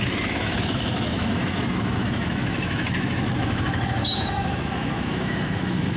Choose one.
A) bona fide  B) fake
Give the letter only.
B